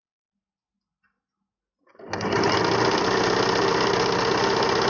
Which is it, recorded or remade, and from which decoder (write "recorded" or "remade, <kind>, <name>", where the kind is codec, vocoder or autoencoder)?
recorded